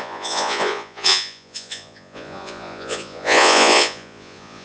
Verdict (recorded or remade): remade